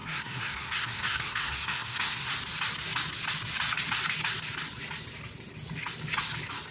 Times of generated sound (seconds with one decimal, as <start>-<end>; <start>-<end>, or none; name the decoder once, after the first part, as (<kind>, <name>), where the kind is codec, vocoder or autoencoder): 0.0-2.3 (codec, SNAC)